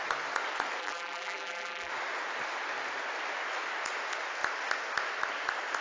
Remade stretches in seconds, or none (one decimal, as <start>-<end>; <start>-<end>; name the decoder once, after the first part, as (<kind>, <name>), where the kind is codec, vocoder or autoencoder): 0.8-1.9 (vocoder, BigVGAN v2)